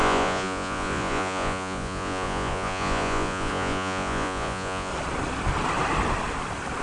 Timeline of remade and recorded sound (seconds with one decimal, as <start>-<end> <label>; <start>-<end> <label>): 0.0-4.9 remade; 4.9-6.8 recorded